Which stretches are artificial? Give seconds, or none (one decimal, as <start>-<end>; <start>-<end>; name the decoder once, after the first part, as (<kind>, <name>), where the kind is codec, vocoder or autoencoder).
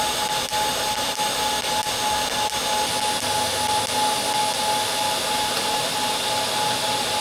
none